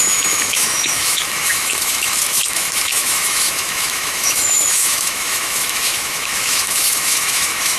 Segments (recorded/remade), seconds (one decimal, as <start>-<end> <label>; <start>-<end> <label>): 0.0-7.8 remade